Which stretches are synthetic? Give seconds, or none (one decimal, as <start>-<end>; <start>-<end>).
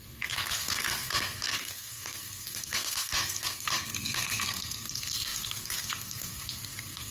0.0-7.1